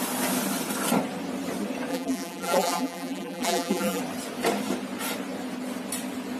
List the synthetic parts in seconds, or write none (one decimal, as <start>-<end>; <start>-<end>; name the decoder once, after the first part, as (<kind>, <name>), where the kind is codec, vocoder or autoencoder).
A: 1.9-4.0 (vocoder, BigVGAN v2)